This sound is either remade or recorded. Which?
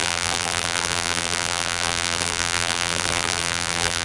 remade